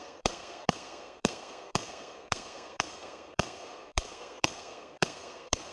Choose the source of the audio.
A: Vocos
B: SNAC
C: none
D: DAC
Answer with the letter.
B